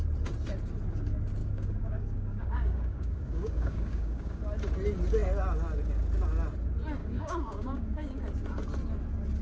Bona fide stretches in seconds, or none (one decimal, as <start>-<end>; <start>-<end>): 0.0-1.4; 4.4-7.0; 8.2-9.4